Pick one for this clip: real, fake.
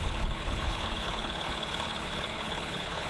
fake